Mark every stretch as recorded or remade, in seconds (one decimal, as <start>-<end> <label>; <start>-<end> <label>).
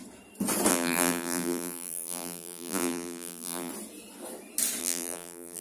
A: 0.0-0.7 recorded; 0.7-3.7 remade; 3.7-4.8 recorded; 4.8-5.6 remade